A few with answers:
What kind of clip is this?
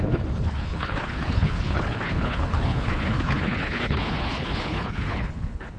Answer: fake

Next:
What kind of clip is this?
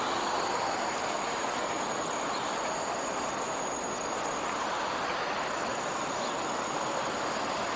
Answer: real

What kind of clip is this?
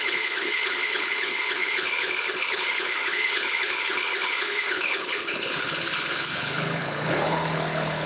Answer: fake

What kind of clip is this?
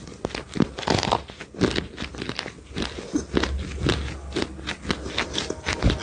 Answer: real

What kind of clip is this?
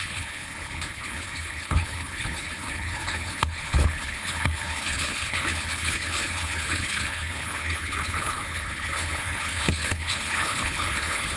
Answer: fake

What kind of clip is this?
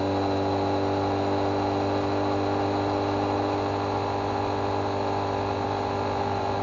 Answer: real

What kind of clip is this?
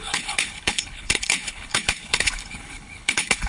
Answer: fake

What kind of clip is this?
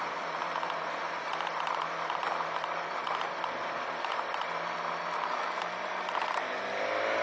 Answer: real